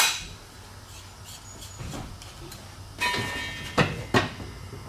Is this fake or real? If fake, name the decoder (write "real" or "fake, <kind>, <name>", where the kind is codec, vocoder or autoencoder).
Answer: real